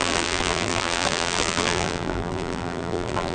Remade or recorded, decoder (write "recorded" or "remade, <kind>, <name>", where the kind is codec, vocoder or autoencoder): remade, vocoder, BigVGAN v2